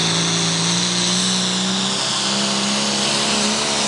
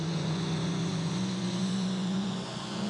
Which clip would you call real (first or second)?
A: first